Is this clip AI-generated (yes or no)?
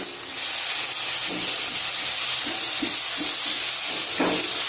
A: no